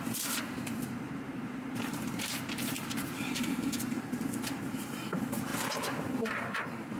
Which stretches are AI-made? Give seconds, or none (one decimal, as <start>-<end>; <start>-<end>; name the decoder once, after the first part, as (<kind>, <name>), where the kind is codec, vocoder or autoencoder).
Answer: 0.0-7.0 (vocoder, BigVGAN v2)